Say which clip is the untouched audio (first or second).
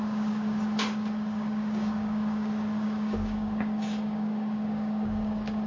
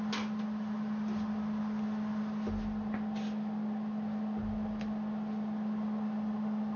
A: second